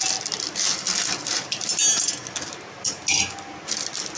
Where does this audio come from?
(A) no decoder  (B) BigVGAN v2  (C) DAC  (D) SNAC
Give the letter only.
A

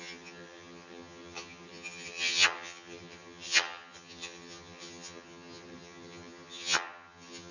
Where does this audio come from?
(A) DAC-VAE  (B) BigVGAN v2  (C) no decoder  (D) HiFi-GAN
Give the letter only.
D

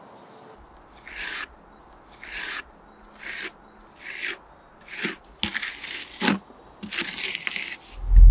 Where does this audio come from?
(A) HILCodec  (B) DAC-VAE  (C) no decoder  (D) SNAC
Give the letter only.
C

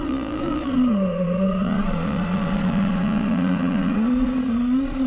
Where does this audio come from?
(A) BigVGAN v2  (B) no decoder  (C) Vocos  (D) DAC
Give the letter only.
C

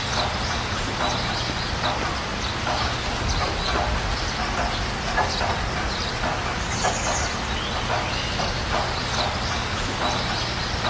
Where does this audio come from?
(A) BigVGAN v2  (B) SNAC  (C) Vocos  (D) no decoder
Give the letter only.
D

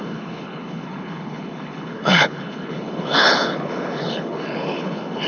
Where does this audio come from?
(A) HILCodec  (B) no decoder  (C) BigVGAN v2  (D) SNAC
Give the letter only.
A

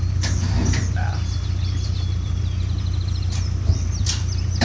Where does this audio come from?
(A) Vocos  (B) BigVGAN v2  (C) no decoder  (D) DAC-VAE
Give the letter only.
C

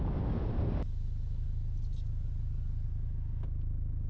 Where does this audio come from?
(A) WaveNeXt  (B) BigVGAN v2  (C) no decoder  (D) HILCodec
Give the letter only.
C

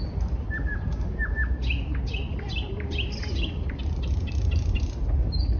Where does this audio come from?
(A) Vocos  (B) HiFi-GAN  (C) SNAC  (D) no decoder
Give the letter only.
D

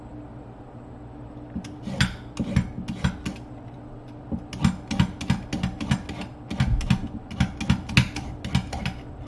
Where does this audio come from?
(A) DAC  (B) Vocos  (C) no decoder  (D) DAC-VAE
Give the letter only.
C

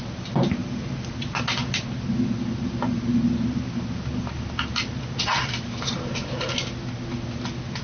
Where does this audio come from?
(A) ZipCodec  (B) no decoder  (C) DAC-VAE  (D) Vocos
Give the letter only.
B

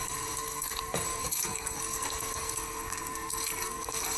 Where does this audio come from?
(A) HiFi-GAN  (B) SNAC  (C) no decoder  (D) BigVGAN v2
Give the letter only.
B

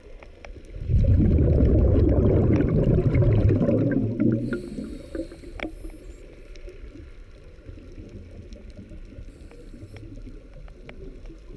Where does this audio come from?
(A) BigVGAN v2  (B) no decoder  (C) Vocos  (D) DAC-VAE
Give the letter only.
B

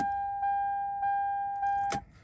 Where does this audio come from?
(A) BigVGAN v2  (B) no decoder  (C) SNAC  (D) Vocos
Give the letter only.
B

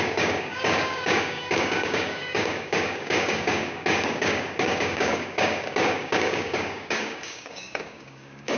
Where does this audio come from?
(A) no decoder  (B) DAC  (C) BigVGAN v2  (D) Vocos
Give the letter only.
B